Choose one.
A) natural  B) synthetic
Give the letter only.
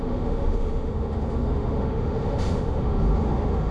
B